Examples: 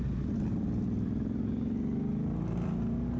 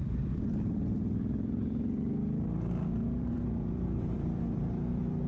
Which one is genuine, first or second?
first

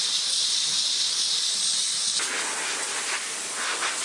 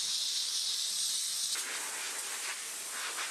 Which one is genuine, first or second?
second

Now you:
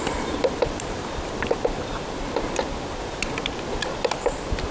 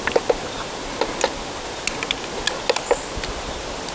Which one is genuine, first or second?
second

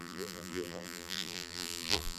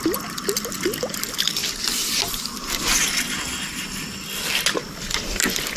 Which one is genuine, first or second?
second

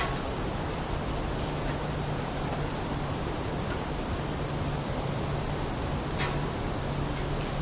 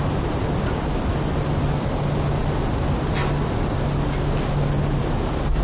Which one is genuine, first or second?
second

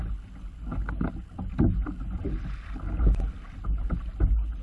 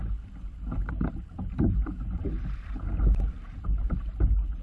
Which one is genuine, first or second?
first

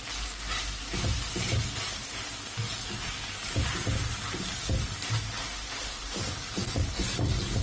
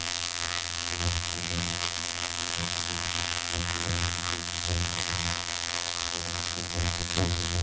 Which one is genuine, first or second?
first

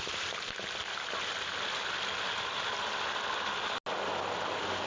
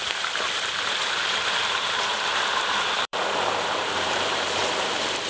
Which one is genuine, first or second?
first